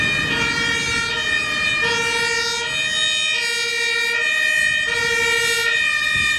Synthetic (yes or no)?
no